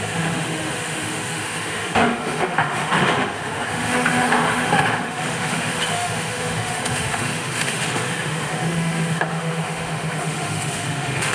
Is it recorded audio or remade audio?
remade